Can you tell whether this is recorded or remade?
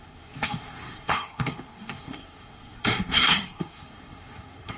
remade